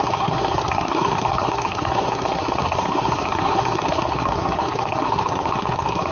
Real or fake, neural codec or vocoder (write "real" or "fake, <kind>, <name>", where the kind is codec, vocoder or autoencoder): fake, codec, SNAC